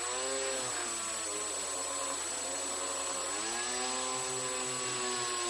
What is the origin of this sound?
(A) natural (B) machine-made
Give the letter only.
A